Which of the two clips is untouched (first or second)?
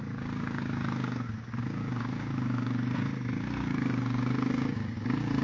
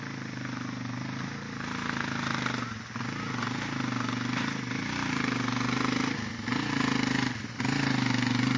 second